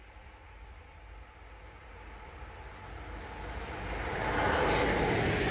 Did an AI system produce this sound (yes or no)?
no